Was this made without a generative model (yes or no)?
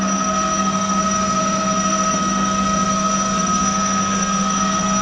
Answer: no